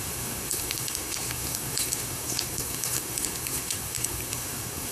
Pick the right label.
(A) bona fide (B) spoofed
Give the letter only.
B